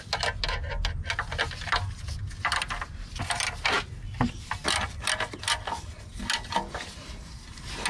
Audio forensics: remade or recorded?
recorded